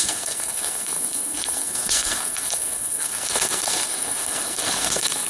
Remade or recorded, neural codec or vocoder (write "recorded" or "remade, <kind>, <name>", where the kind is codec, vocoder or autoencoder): remade, codec, SNAC